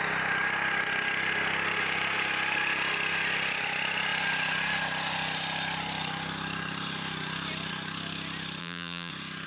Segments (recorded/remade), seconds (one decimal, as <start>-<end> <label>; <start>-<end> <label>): 0.0-8.6 recorded; 8.6-9.1 remade; 9.1-9.5 recorded